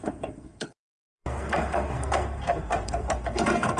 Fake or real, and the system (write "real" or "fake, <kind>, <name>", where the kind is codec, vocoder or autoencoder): fake, codec, SNAC